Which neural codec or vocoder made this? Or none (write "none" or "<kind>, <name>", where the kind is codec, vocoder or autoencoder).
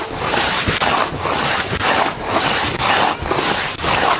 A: none